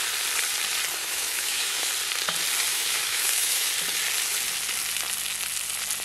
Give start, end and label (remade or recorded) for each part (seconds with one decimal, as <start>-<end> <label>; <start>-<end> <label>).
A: 0.0-1.0 recorded; 1.0-1.9 remade; 1.9-2.7 recorded; 2.7-3.7 remade; 3.7-6.0 recorded